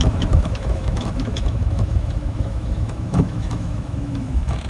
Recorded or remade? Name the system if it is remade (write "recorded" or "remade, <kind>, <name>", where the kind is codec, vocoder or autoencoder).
remade, autoencoder, DAC-VAE